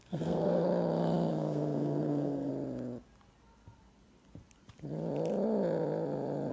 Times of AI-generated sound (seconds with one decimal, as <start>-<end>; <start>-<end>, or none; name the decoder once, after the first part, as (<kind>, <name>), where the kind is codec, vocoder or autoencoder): 0.0-0.7 (codec, SNAC); 1.3-2.5

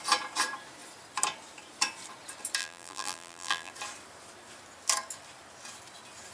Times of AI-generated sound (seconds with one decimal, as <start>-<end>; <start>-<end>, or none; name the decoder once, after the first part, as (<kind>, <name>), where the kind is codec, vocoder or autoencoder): 2.6-3.7 (vocoder, BigVGAN v2)

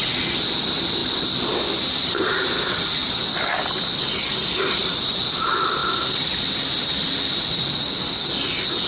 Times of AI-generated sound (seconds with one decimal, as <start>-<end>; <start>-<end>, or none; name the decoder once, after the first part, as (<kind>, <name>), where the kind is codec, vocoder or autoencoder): none

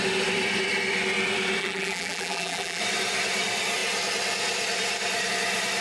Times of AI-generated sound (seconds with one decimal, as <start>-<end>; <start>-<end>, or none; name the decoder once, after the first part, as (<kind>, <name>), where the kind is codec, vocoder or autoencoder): 1.6-2.8 (vocoder, BigVGAN v2)

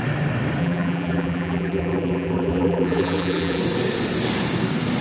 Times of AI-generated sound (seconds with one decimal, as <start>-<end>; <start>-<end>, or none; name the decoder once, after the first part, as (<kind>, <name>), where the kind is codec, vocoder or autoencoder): 0.6-3.6 (vocoder, BigVGAN v2)

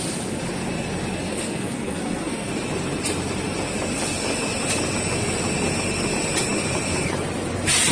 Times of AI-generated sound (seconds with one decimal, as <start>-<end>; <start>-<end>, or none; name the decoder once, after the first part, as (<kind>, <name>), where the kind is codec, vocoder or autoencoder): 1.3-2.5 (codec, SNAC)